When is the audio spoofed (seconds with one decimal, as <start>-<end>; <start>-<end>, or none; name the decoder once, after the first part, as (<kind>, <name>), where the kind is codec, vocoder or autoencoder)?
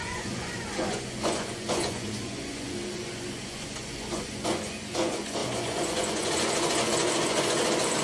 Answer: 0.0-8.0 (vocoder, Vocos)